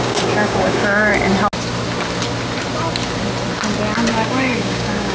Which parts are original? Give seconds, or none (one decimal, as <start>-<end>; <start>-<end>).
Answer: 1.1-4.1

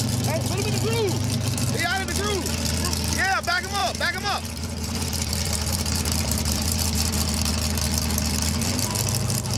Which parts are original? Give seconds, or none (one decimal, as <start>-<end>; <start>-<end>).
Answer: 0.0-3.8; 7.5-9.6

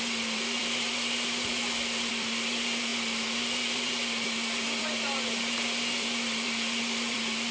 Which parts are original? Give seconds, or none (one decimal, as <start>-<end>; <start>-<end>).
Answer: none